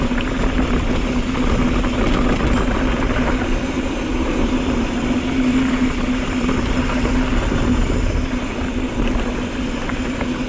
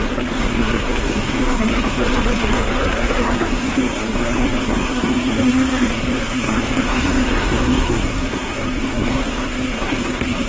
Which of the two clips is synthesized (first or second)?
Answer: second